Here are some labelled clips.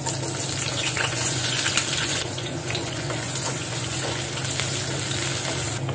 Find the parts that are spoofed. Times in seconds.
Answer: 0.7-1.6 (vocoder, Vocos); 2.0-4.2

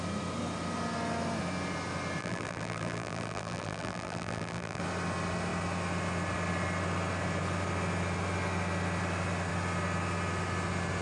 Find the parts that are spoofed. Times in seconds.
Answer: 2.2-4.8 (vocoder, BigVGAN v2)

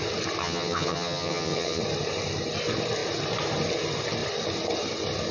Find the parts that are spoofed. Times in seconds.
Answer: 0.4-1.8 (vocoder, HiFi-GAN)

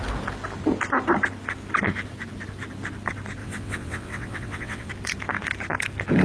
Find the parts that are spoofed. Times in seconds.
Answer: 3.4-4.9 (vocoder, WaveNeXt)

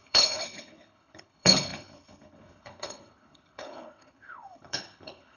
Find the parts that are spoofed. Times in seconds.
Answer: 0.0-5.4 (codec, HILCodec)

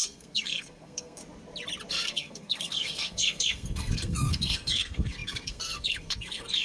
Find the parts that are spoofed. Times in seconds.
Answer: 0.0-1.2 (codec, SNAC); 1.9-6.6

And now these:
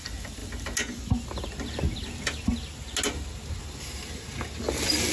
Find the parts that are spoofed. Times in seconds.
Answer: none

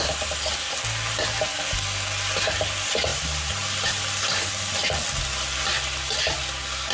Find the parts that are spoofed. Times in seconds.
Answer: 1.5-2.1 (codec, DAC)